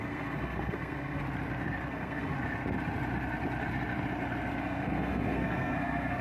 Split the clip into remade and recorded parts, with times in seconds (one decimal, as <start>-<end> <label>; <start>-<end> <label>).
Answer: 0.0-1.2 remade; 1.2-1.9 recorded; 1.9-2.3 remade; 2.3-4.6 recorded; 4.6-6.2 remade